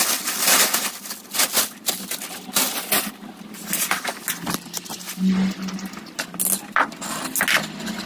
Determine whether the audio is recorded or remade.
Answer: recorded